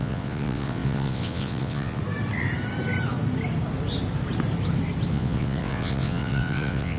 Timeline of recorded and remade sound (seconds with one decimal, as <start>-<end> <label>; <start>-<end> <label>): 0.0-2.0 remade; 2.0-5.1 recorded; 5.1-7.0 remade